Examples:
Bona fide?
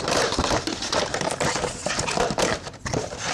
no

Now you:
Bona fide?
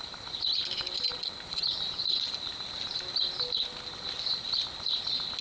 yes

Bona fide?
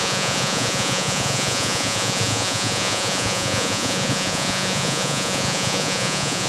no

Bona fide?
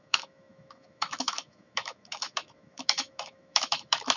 no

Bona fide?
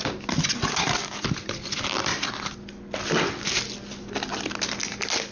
yes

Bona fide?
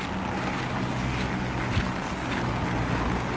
yes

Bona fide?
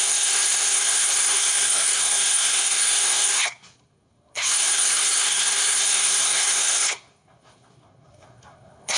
no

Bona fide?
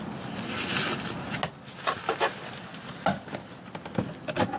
yes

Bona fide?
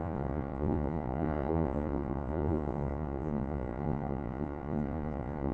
no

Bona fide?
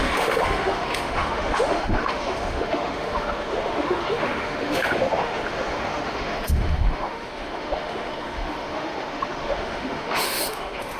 no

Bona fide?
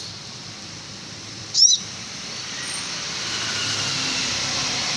yes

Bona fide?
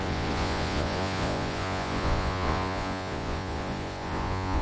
no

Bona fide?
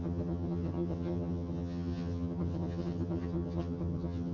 no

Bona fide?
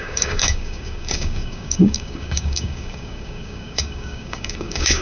no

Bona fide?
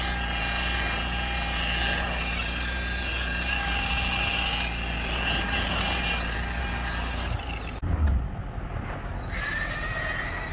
yes